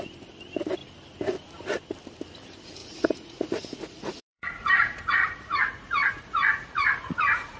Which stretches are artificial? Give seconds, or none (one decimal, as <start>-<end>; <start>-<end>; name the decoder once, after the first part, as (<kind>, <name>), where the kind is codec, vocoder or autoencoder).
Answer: 2.8-7.6 (vocoder, Vocos)